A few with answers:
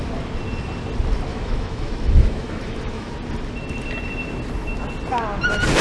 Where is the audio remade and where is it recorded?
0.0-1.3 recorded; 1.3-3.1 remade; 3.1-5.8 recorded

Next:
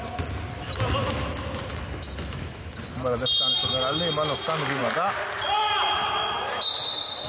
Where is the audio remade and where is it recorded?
0.0-1.7 recorded; 1.7-2.8 remade; 2.8-7.3 recorded

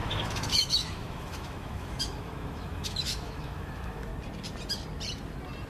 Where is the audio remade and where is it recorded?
0.0-4.1 remade; 4.1-5.7 recorded

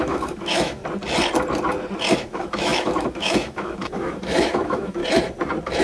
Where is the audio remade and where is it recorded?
0.0-0.8 remade; 0.8-2.1 recorded; 2.1-5.0 remade; 5.0-5.8 recorded

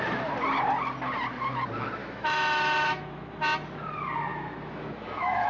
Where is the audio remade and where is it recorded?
0.0-2.0 recorded; 2.0-3.4 remade; 3.4-4.3 recorded; 4.3-5.5 remade